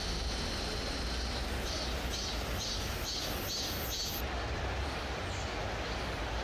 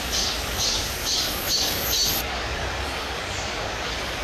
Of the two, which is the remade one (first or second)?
second